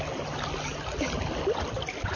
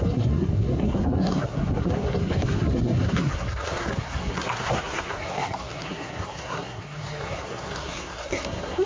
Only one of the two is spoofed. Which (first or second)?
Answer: second